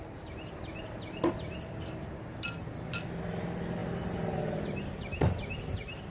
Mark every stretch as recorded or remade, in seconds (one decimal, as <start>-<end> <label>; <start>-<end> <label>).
0.0-6.1 recorded

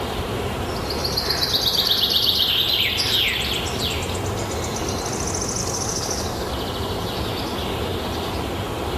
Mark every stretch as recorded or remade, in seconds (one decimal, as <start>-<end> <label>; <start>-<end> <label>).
0.0-5.6 recorded; 5.6-6.5 remade; 6.5-9.0 recorded

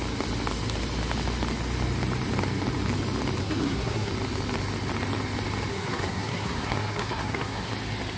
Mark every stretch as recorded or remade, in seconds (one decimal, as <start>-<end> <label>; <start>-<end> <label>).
0.0-3.4 recorded; 3.4-4.1 remade; 4.1-5.7 recorded; 5.7-7.7 remade; 7.7-8.2 recorded

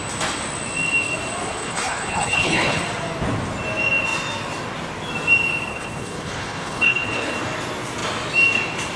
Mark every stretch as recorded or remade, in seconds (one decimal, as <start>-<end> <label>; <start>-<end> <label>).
0.0-1.5 recorded; 1.5-2.8 remade; 2.8-5.7 recorded; 5.7-7.3 remade; 7.3-9.0 recorded

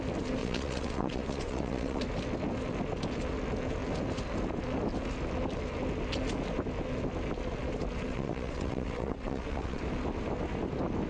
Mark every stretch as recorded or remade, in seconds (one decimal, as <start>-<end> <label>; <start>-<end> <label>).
0.0-0.4 recorded; 0.4-2.0 remade; 2.0-8.1 recorded; 8.1-9.8 remade; 9.8-11.1 recorded

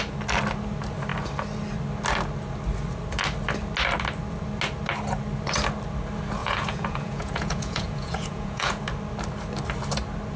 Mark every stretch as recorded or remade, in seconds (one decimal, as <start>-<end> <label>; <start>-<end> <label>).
0.0-6.4 recorded; 6.4-8.8 remade; 8.8-10.4 recorded

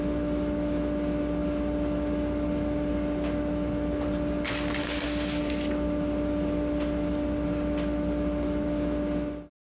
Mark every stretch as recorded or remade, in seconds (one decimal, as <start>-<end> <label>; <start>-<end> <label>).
0.0-4.8 recorded; 4.8-5.4 remade; 5.4-9.7 recorded